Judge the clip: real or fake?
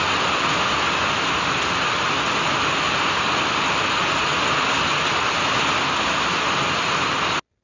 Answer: real